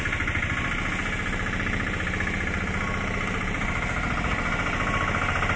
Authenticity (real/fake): real